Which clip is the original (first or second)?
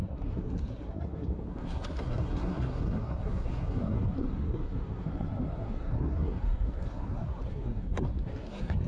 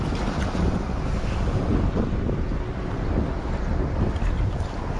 second